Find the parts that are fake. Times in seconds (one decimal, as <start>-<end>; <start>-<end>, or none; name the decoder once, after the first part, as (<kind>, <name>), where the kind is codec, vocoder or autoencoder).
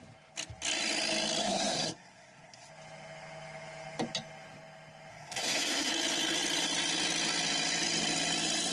1.4-2.7 (codec, SNAC); 5.1-5.9